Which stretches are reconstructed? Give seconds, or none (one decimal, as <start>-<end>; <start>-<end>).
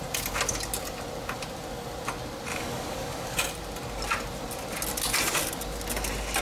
2.5-3.4